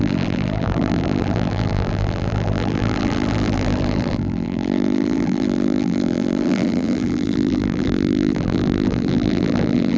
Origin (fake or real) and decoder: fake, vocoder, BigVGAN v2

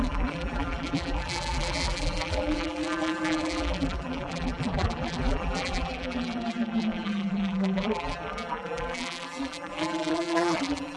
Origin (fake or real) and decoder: fake, vocoder, BigVGAN v2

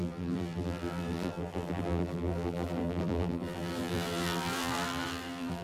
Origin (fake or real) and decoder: fake, vocoder, BigVGAN v2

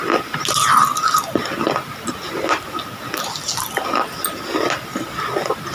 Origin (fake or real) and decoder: real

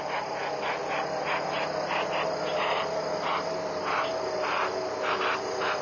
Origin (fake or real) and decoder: real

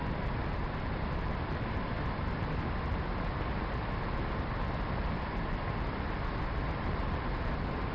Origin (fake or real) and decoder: real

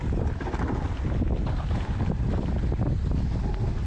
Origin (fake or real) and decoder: real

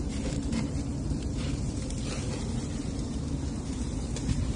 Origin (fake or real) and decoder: fake, vocoder, BigVGAN v2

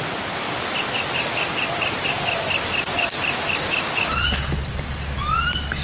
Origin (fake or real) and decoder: fake, vocoder, BigVGAN v2